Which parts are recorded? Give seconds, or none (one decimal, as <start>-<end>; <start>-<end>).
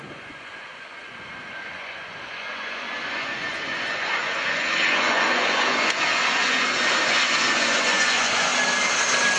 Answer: 8.5-9.4